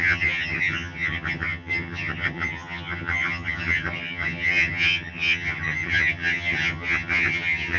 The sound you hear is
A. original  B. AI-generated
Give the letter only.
B